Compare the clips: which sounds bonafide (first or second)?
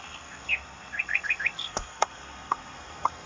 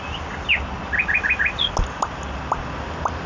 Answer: second